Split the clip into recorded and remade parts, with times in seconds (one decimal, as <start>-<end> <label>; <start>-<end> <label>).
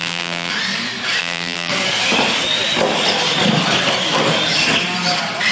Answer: 0.0-0.5 remade; 0.5-1.2 recorded; 1.2-1.7 remade; 1.7-5.5 recorded